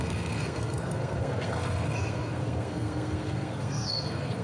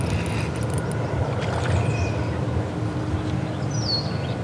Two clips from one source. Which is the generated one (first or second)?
first